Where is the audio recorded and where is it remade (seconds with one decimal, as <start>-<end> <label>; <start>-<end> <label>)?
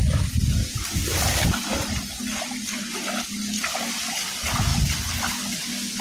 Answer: 0.0-6.0 recorded